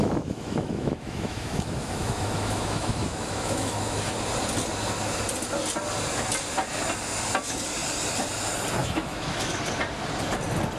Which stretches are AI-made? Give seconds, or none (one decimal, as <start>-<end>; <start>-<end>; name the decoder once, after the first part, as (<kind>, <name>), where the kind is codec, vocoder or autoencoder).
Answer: 0.0-4.0 (autoencoder, DAC-VAE); 8.8-9.5